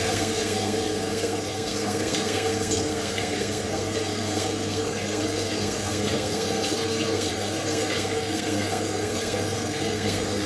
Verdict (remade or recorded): remade